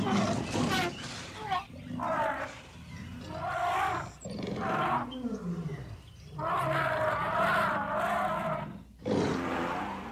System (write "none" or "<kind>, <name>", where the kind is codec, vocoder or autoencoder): vocoder, BigVGAN v2